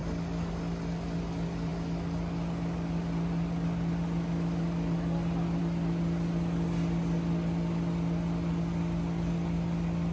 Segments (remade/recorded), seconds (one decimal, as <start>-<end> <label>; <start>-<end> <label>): 0.0-10.1 recorded

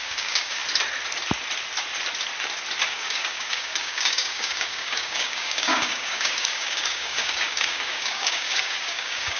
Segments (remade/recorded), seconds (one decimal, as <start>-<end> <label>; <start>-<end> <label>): 0.0-0.6 remade; 0.6-2.9 recorded; 2.9-9.4 remade

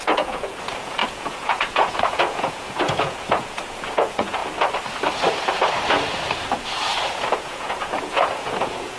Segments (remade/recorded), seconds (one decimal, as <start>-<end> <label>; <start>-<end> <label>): 0.0-4.4 remade; 4.4-7.3 recorded; 7.3-9.0 remade